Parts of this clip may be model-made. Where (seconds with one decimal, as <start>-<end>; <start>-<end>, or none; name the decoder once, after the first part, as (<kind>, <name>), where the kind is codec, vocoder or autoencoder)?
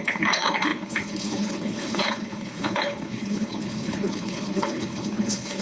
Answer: 0.0-5.6 (codec, HILCodec)